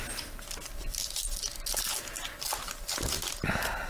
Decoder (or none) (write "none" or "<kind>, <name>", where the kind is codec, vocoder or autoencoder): none